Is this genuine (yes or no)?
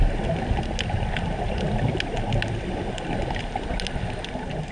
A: yes